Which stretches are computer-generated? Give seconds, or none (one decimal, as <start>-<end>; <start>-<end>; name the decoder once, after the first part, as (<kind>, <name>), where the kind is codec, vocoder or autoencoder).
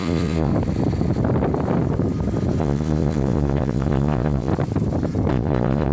0.0-0.5 (vocoder, Vocos); 2.6-4.5; 5.3-5.9